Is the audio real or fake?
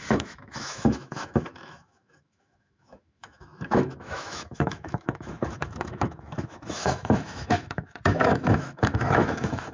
fake